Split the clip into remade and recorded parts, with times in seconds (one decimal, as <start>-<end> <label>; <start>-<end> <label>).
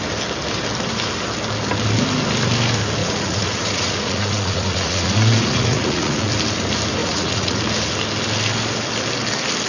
0.0-3.0 recorded; 3.0-6.3 remade; 6.3-7.0 recorded; 7.0-7.6 remade; 7.6-9.7 recorded